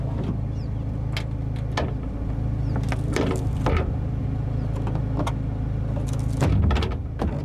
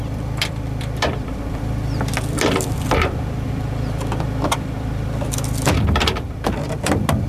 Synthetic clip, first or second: second